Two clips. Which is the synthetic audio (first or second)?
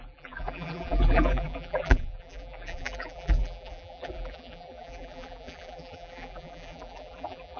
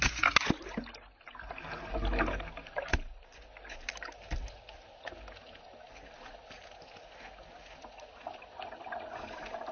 first